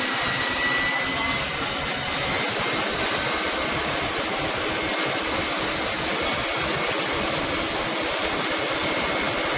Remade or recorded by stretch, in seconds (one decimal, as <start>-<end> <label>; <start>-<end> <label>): 0.0-9.6 recorded